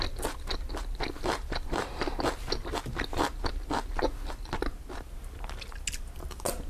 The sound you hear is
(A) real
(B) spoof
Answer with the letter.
A